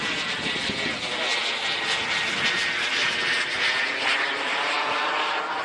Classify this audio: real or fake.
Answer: real